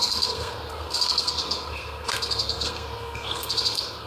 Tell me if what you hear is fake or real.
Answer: fake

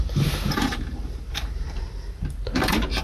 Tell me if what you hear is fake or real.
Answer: fake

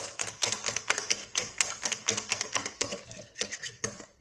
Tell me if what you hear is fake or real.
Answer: fake